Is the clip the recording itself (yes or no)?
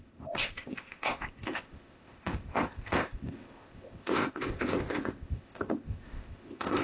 no